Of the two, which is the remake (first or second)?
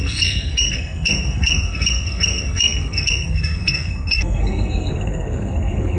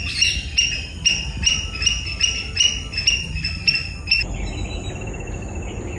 first